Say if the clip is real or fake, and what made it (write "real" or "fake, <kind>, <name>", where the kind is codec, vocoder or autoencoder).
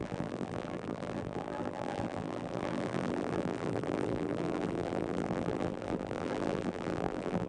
fake, vocoder, BigVGAN v2